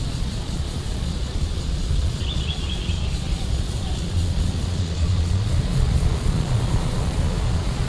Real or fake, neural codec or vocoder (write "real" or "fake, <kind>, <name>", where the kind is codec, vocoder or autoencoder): fake, vocoder, Vocos